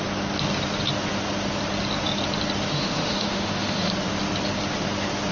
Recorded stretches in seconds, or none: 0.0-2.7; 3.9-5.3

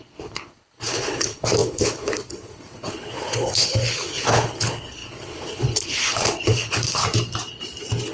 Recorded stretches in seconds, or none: 7.0-8.1

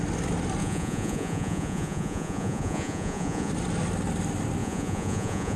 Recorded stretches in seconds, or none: 0.0-0.6; 3.5-4.6

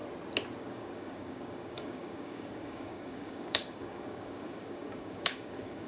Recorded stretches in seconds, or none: 0.0-0.6

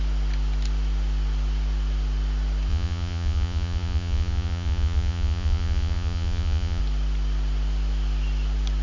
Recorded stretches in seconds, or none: 0.0-2.7; 6.8-8.8

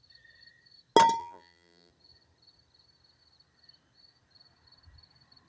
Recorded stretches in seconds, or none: 0.0-1.2; 1.9-5.5